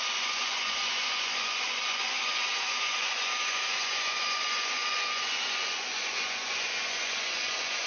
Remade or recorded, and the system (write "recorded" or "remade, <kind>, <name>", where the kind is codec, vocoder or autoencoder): remade, vocoder, Vocos